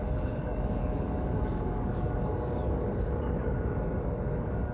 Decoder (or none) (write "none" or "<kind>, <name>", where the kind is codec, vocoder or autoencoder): codec, DAC